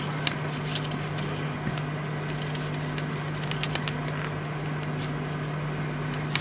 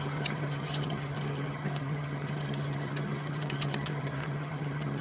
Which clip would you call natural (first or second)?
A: first